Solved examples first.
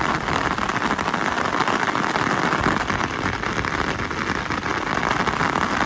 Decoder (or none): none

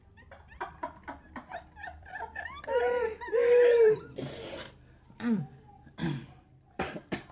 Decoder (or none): vocoder, BigVGAN v2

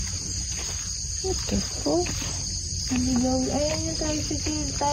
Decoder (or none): none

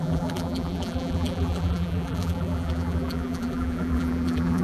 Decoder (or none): vocoder, BigVGAN v2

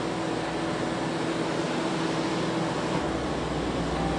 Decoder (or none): none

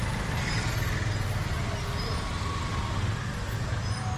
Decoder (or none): none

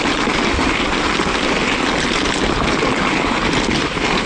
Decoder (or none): none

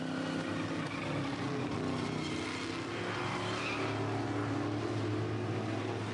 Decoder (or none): none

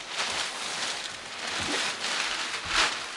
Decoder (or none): none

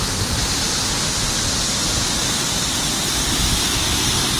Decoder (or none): none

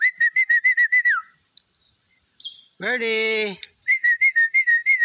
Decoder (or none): vocoder, BigVGAN v2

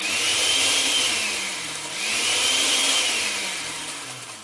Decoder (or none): vocoder, BigVGAN v2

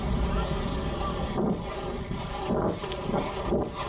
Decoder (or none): none